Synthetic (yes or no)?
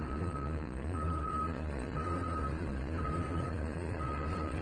yes